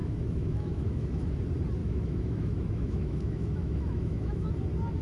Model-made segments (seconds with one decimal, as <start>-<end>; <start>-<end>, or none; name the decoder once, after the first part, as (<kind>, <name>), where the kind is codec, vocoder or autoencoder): 0.0-1.3 (autoencoder, DAC-VAE); 1.8-4.5